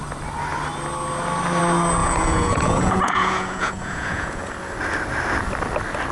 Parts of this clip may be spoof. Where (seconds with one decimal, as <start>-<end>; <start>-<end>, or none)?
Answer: 2.0-4.5